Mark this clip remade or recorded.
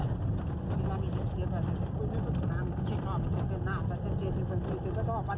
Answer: recorded